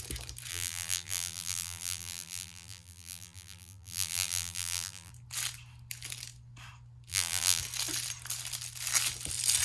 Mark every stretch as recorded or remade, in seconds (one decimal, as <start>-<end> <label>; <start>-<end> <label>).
0.0-0.5 recorded; 0.5-5.1 remade; 5.1-7.1 recorded; 7.1-7.6 remade; 7.6-9.6 recorded